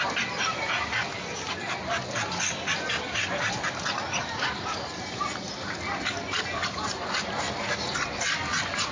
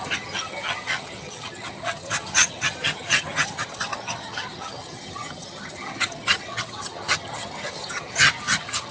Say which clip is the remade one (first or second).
second